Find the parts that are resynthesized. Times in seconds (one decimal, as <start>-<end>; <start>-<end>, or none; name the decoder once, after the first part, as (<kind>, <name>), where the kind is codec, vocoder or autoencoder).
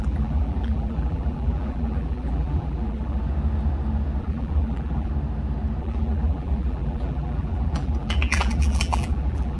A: 0.0-3.2 (vocoder, BigVGAN v2); 4.2-5.1; 5.8-9.6